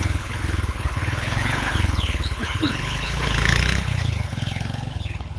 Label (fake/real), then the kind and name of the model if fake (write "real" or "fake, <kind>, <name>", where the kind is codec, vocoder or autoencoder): fake, codec, HILCodec